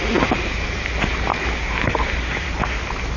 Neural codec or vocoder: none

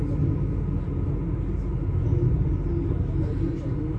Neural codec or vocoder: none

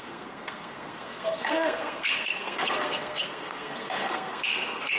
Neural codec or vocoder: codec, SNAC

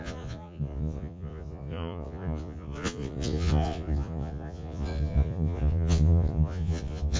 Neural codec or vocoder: vocoder, Vocos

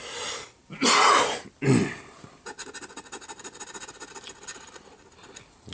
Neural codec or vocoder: none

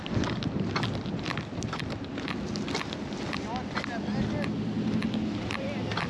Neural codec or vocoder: none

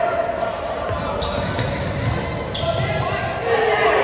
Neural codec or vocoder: none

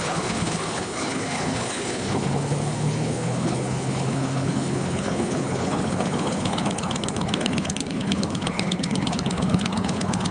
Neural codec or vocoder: codec, HILCodec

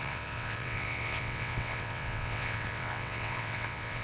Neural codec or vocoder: vocoder, WaveNeXt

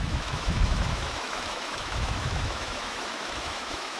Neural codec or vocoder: autoencoder, DAC-VAE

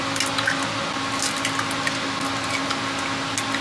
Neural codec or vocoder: none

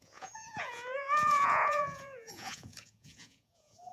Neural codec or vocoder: vocoder, Vocos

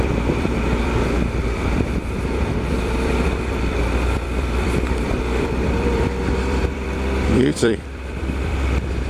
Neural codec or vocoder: vocoder, BigVGAN v2